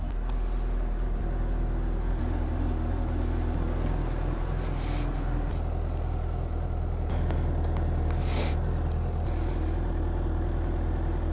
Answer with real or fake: real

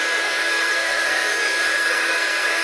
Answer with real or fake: fake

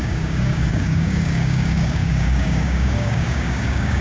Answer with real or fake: fake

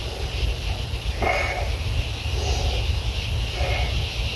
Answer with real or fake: real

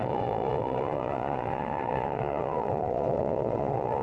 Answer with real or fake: fake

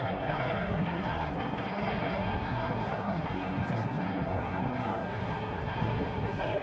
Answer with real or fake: fake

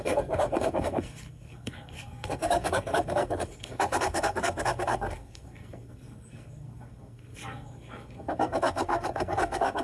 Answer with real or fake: fake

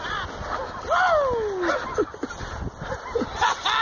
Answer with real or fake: real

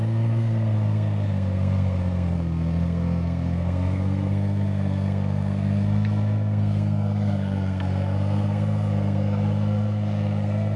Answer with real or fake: fake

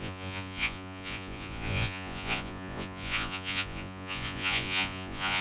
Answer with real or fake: fake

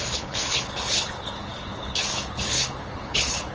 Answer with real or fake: fake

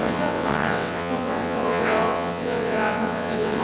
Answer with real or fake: fake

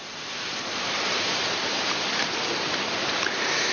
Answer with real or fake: fake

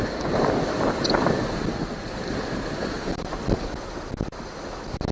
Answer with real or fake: real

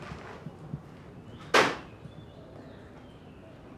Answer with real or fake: real